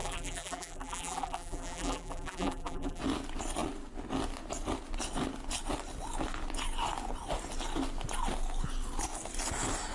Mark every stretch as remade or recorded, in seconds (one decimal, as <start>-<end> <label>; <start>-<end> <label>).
0.0-3.0 remade; 3.0-9.9 recorded